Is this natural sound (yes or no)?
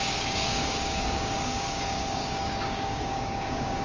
no